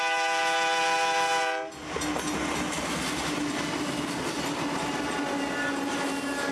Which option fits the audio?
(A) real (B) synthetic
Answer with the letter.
A